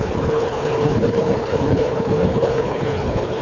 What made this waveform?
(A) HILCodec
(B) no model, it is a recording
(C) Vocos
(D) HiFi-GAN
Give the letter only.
A